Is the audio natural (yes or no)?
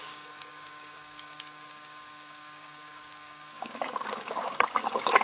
no